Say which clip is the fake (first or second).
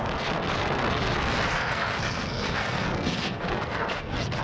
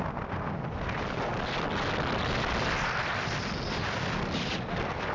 first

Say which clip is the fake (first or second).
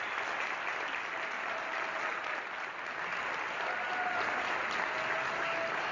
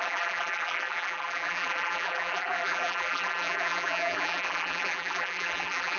second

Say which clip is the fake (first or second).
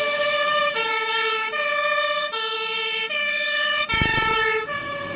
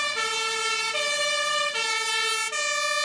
first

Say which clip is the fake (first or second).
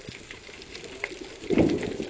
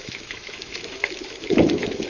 second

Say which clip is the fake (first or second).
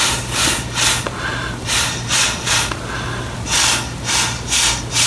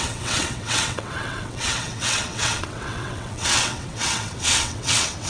second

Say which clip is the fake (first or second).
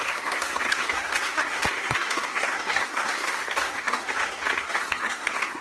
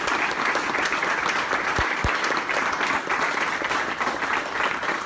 first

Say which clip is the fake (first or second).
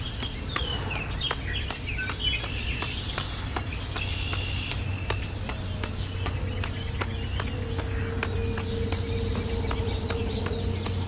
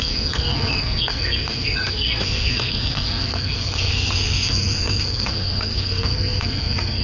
second